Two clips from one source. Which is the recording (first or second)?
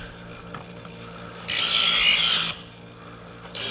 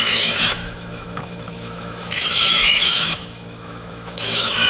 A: first